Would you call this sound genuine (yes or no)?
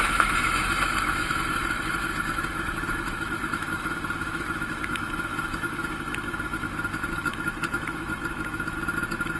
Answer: no